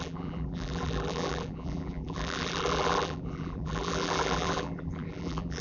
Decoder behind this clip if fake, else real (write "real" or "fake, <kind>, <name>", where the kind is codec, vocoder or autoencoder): fake, vocoder, BigVGAN v2